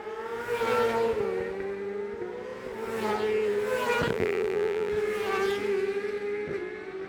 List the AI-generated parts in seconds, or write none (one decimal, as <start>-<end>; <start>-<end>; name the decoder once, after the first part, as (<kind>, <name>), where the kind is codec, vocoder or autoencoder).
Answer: 4.1-4.9 (vocoder, BigVGAN v2)